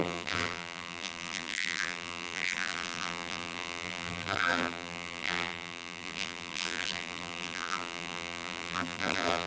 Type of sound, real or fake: fake